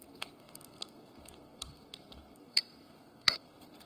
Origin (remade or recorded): remade